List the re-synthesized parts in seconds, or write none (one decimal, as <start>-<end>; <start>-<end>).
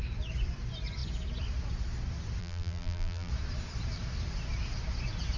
2.4-3.3